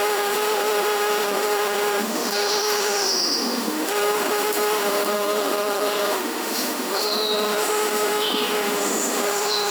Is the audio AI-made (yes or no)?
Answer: yes